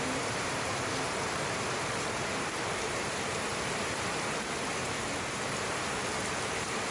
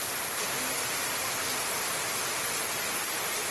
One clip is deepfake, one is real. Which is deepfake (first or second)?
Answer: first